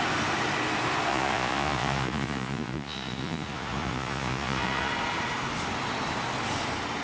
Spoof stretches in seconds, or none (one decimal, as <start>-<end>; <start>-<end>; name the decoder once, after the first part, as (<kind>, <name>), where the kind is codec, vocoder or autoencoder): 1.1-4.9 (vocoder, Vocos)